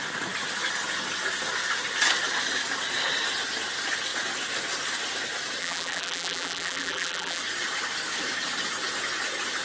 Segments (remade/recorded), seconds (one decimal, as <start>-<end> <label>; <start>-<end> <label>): 0.0-5.6 recorded; 5.6-7.4 remade; 7.4-9.6 recorded